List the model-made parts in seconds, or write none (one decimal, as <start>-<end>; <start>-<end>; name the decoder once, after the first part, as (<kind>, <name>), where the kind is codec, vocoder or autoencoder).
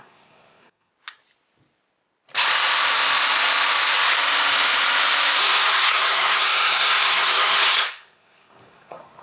0.0-0.9 (codec, SNAC); 5.4-9.2